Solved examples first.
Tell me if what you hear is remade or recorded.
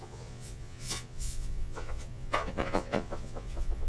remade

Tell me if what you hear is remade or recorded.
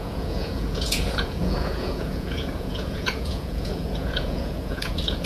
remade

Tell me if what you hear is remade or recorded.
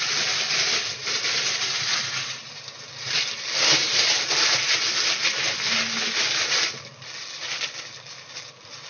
recorded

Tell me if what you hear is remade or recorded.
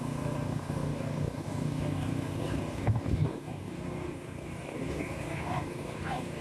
remade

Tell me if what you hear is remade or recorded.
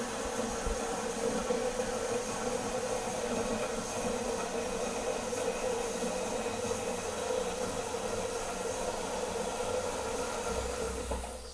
recorded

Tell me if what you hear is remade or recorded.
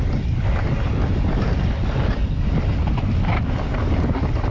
recorded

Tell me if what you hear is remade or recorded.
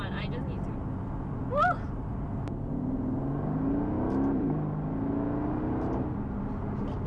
recorded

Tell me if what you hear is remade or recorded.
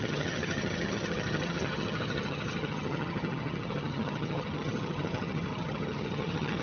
remade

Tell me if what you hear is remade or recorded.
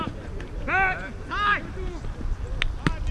recorded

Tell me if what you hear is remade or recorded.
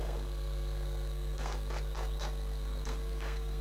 remade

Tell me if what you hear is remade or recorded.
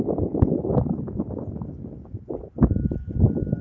recorded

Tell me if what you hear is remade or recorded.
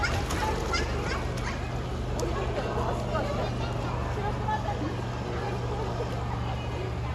recorded